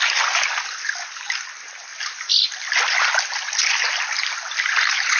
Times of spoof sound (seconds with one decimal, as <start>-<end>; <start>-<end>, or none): none